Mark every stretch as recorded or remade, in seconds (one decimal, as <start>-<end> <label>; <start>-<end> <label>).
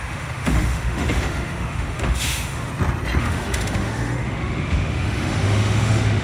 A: 0.0-2.7 remade; 2.7-3.2 recorded; 3.2-6.2 remade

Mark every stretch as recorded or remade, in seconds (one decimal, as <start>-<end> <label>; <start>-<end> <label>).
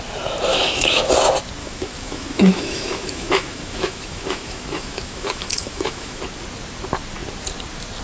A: 0.0-0.5 recorded; 0.5-1.1 remade; 1.1-1.6 recorded; 1.6-6.2 remade; 6.2-8.0 recorded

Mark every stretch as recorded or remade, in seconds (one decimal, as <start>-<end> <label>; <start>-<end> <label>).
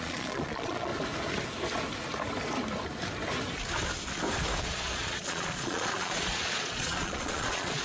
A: 0.0-0.9 remade; 0.9-4.6 recorded; 4.6-7.8 remade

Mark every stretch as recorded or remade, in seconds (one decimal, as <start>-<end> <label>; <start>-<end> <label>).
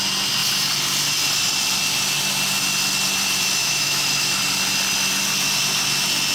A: 0.0-3.6 recorded; 3.6-4.4 remade; 4.4-6.3 recorded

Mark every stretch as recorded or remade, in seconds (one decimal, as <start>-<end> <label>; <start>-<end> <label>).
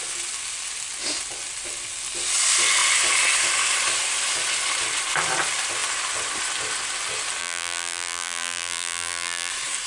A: 0.0-7.4 recorded; 7.4-9.5 remade; 9.5-9.9 recorded